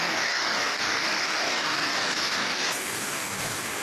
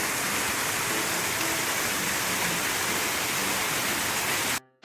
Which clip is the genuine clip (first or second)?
second